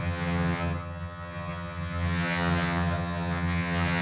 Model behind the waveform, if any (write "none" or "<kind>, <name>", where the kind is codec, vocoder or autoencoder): vocoder, HiFi-GAN